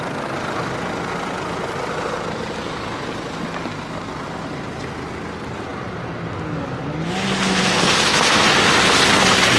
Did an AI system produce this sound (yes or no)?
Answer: no